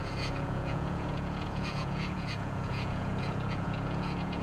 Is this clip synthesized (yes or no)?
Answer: yes